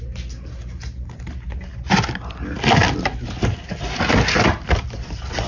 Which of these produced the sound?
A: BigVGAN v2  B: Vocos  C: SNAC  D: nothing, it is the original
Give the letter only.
D